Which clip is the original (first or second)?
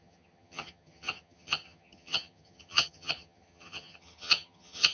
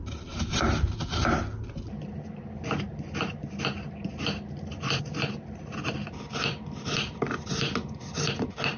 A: second